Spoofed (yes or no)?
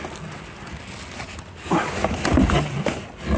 no